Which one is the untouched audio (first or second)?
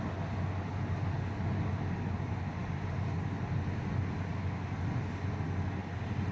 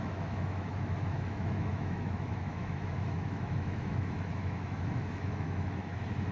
first